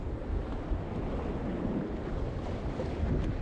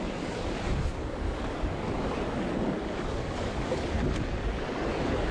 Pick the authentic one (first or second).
first